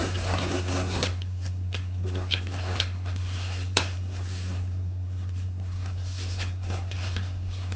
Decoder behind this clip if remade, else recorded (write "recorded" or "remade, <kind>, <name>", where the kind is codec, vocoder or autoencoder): remade, codec, SNAC